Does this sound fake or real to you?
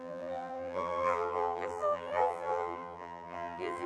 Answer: fake